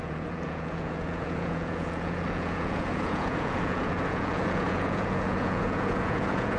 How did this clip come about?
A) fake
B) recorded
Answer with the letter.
A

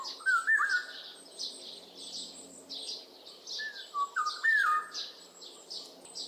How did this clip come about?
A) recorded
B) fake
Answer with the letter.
A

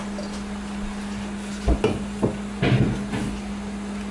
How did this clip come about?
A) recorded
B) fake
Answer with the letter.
A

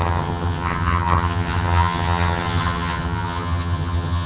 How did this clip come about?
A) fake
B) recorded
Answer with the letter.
A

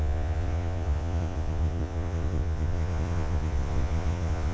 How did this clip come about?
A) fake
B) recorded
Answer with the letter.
A